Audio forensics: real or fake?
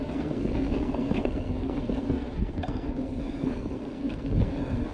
fake